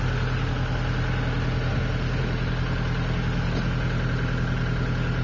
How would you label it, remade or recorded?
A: recorded